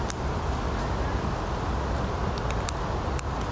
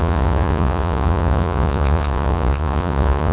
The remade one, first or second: second